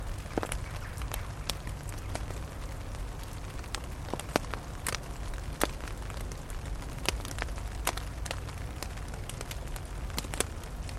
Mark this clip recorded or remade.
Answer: recorded